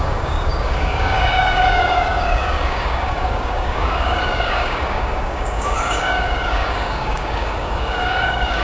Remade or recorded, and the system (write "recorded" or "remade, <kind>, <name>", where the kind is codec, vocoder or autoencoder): remade, codec, DAC